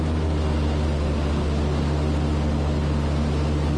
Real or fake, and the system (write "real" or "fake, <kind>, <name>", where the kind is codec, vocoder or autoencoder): real